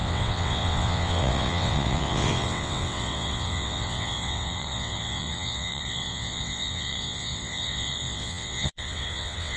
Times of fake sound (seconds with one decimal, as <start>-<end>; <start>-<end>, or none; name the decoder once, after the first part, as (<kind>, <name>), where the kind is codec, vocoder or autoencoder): 0.0-9.6 (vocoder, WaveNeXt)